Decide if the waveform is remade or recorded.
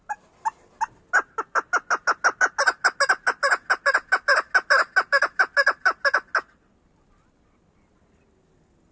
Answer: recorded